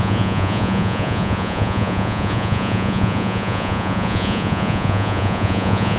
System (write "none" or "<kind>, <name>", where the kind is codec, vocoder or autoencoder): vocoder, Vocos